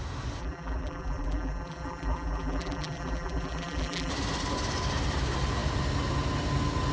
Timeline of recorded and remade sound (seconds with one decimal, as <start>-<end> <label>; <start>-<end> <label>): 0.0-0.4 recorded; 0.4-4.1 remade; 4.1-6.9 recorded